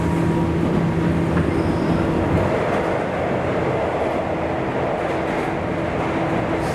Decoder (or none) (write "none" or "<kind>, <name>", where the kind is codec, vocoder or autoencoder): none